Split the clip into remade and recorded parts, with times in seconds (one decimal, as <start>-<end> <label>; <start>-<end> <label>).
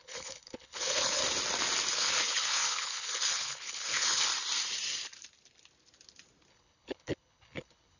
0.0-1.2 remade; 1.2-1.9 recorded; 1.9-4.3 remade; 4.3-6.5 recorded; 6.5-8.0 remade